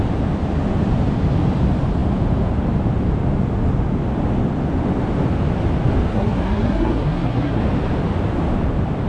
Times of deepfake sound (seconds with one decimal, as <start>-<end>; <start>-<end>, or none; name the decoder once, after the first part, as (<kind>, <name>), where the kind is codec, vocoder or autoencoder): 6.1-7.6 (codec, SNAC)